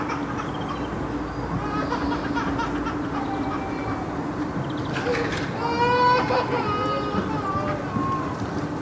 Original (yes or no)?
yes